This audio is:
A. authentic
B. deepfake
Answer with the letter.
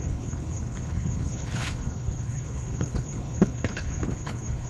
B